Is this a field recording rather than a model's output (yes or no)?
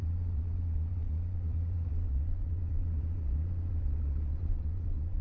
no